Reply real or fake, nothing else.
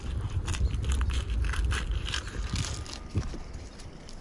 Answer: fake